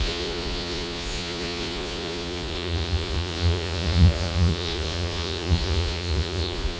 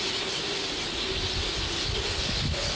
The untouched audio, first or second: second